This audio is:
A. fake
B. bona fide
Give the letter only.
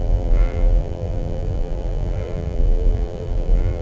A